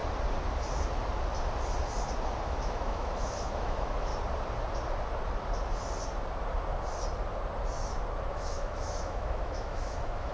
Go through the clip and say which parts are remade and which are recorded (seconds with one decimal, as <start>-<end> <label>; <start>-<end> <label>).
0.0-2.4 recorded; 2.4-4.1 remade; 4.1-8.3 recorded; 8.3-10.3 remade